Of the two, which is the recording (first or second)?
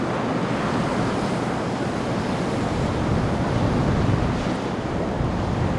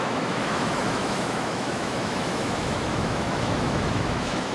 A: first